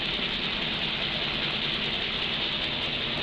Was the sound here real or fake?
real